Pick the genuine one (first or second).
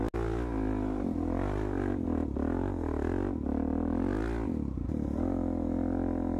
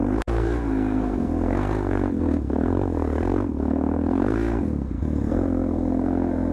first